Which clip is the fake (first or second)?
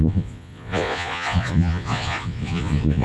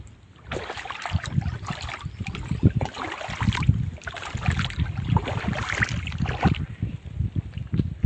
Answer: first